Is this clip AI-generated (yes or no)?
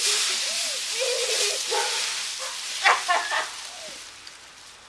no